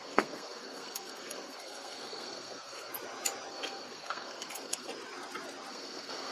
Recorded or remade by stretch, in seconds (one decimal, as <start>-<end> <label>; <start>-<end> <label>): 0.0-2.9 remade; 2.9-3.5 recorded; 3.5-4.9 remade; 4.9-5.7 recorded; 5.7-6.3 remade